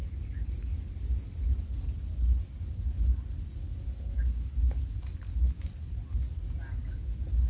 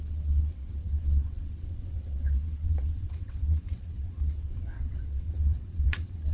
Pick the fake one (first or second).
second